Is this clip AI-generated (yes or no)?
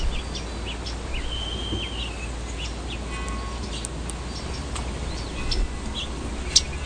no